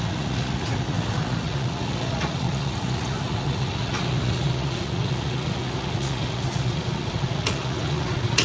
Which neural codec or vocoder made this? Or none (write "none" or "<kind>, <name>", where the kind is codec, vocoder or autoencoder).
vocoder, Vocos